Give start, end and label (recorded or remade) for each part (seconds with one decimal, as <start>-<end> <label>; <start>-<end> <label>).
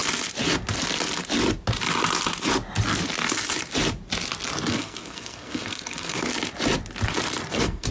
0.0-4.7 recorded; 4.7-6.3 remade; 6.3-7.5 recorded; 7.5-7.9 remade